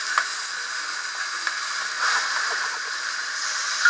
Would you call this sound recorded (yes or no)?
yes